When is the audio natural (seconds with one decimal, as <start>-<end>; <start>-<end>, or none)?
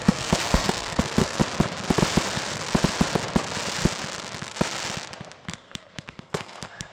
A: 1.4-5.5